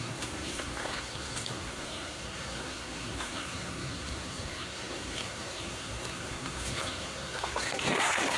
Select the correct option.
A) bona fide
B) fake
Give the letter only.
B